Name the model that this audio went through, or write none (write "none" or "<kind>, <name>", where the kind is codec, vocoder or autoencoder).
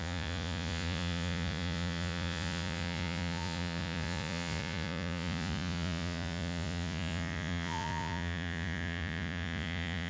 vocoder, Vocos